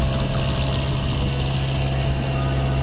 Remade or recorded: recorded